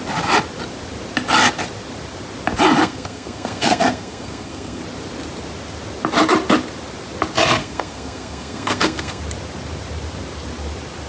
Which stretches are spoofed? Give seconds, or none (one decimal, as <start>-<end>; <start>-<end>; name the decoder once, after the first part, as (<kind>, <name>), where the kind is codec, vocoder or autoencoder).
2.8-4.8 (codec, SNAC); 7.6-9.2